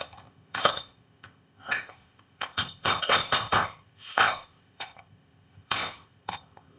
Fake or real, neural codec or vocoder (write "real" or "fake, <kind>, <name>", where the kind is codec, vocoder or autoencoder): fake, codec, ZipCodec